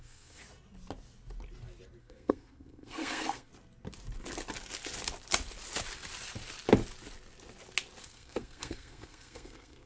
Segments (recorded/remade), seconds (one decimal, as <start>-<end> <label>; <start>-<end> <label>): 0.0-0.4 remade; 0.4-2.0 recorded; 2.0-3.5 remade; 3.5-8.0 recorded; 8.0-9.9 remade